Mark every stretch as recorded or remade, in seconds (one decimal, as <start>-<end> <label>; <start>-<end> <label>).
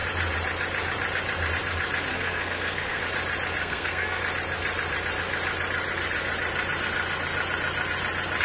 0.0-2.1 recorded; 2.1-3.0 remade; 3.0-3.6 recorded; 3.6-4.2 remade; 4.2-8.4 recorded